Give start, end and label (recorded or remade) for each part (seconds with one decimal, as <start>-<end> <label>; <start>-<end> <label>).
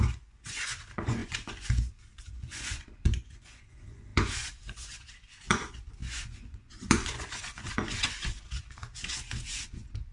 0.0-10.1 remade